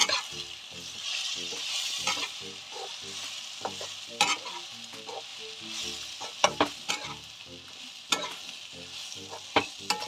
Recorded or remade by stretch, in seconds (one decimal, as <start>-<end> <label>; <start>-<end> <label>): 0.0-2.6 remade; 2.6-10.1 recorded